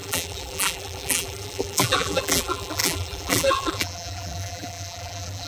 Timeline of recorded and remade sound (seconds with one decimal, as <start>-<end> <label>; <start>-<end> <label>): 0.0-5.5 remade